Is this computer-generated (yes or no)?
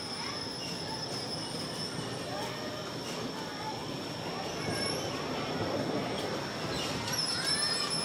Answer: no